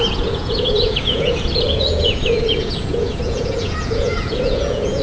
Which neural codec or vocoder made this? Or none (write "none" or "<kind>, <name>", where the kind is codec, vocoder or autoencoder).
vocoder, Vocos